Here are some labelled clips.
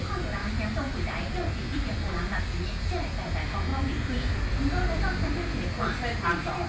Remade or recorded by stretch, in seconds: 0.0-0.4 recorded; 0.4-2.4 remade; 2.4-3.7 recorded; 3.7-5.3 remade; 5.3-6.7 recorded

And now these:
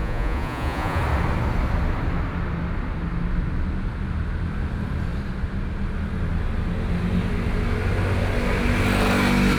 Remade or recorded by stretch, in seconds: 0.0-1.0 remade; 1.0-9.6 recorded

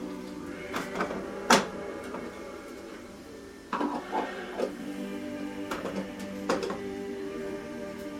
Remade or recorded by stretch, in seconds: 0.0-1.7 recorded; 1.7-6.1 remade; 6.1-6.6 recorded; 6.6-8.2 remade

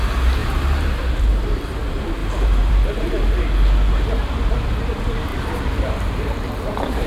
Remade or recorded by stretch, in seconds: 0.0-0.4 recorded; 0.4-1.2 remade; 1.2-2.2 recorded; 2.2-3.4 remade; 3.4-5.3 recorded; 5.3-7.1 remade

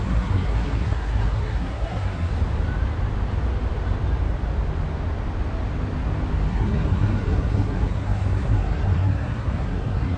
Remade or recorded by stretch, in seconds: 0.0-2.3 remade; 2.3-6.5 recorded; 6.5-10.2 remade

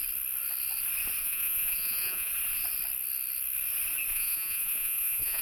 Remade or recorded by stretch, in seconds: 0.0-1.2 recorded; 1.2-2.3 remade; 2.3-4.1 recorded; 4.1-5.4 remade

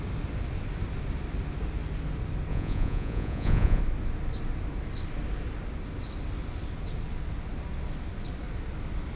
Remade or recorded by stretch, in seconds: 0.0-2.5 recorded; 2.5-3.8 remade; 3.8-9.2 recorded